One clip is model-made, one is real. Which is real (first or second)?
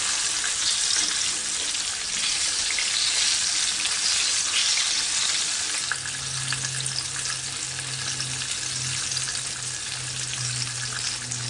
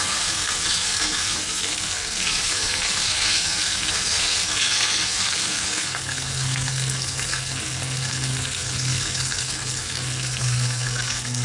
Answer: first